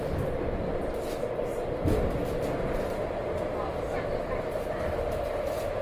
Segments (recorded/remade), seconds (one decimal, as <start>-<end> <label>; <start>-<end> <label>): 0.0-5.8 recorded